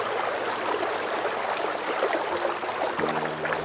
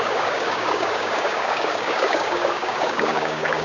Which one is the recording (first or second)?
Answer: first